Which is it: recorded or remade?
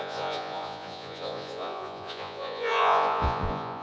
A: remade